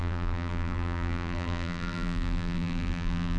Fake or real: fake